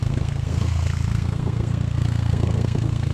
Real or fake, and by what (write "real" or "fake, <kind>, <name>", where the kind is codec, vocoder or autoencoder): fake, codec, SNAC